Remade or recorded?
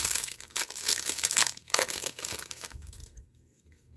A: remade